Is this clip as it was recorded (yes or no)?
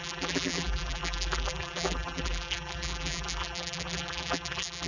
no